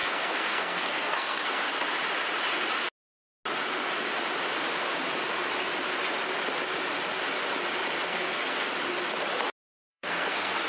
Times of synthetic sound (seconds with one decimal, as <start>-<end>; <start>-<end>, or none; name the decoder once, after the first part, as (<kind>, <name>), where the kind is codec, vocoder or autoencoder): 0.0-1.7 (codec, SNAC); 8.1-8.7; 9.9-10.7